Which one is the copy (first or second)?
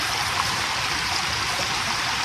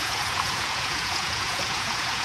second